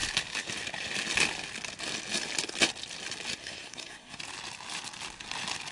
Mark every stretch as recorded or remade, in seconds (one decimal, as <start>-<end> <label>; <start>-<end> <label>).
0.0-3.4 recorded; 3.4-4.2 remade; 4.2-5.7 recorded